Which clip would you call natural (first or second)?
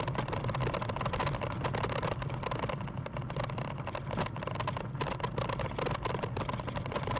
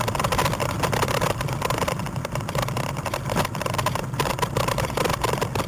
first